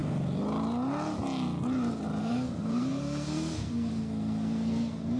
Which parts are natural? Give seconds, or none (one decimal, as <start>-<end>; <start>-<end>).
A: 0.0-2.2